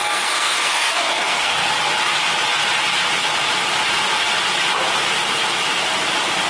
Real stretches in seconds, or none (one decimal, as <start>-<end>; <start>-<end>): 1.7-6.5